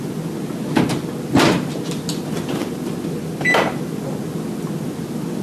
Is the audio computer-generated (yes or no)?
no